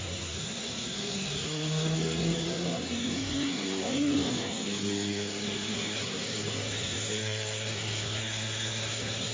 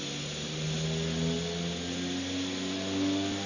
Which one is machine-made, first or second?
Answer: first